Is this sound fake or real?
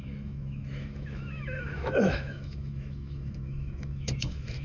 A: fake